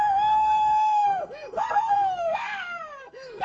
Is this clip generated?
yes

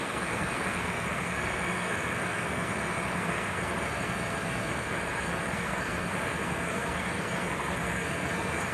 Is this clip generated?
yes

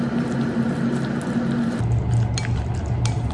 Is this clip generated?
no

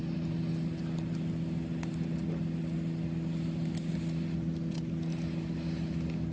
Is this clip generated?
no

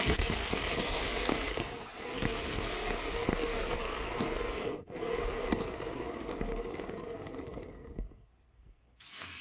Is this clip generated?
yes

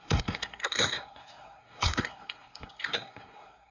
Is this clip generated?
yes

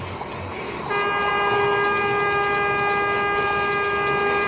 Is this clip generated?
no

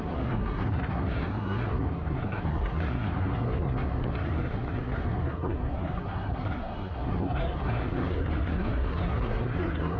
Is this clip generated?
yes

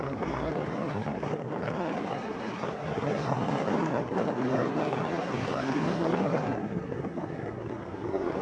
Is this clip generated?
yes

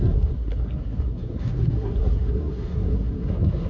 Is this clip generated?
yes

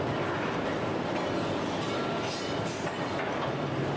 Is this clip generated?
no